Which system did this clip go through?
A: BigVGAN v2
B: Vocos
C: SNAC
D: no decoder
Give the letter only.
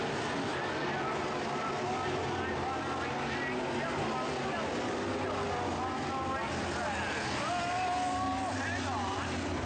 D